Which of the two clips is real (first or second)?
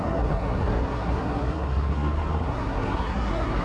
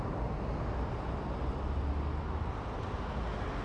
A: second